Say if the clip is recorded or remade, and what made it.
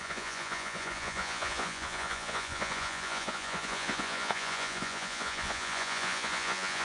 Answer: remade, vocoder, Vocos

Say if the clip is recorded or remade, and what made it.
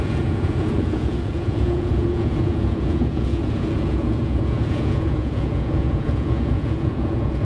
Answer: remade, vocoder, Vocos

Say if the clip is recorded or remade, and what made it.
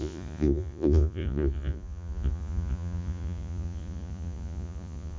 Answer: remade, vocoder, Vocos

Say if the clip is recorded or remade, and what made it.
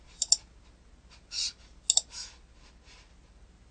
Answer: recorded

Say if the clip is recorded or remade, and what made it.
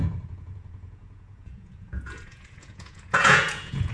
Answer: remade, vocoder, Vocos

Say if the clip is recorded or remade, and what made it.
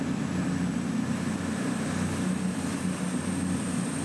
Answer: recorded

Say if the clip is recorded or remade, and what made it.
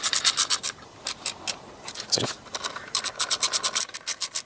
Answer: recorded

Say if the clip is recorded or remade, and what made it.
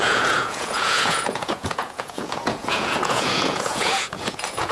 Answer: remade, vocoder, Vocos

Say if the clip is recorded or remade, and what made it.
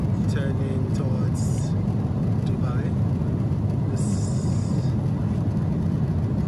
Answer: recorded